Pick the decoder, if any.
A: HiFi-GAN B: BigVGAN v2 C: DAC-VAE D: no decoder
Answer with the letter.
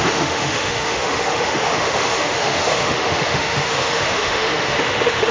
C